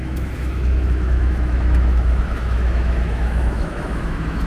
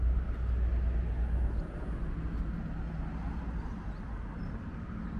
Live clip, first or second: second